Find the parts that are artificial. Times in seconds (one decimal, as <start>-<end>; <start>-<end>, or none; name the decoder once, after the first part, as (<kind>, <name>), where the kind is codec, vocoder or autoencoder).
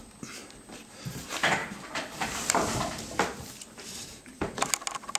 1.6-4.7 (vocoder, BigVGAN v2)